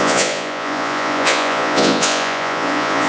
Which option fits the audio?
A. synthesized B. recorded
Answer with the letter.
A